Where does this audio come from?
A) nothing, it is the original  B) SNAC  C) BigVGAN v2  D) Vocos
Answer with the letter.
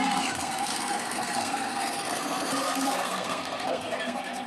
B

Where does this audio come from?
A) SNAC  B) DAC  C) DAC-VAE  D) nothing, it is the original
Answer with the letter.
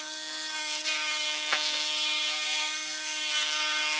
A